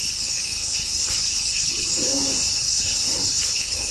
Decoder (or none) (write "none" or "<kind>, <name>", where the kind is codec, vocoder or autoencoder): codec, HILCodec